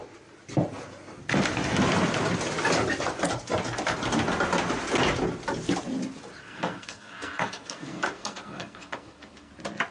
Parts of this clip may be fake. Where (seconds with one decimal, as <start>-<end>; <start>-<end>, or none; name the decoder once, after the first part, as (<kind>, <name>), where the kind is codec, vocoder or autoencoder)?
6.4-9.5 (codec, SNAC)